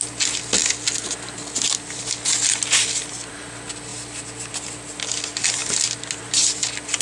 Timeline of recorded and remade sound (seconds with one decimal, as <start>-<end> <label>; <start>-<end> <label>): 0.0-7.0 recorded